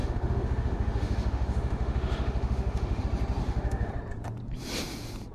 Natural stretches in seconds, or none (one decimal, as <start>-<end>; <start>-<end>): 3.0-3.4; 3.9-5.3